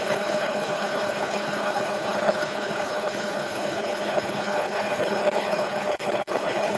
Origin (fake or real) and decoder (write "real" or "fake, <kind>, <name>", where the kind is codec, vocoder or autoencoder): fake, codec, HILCodec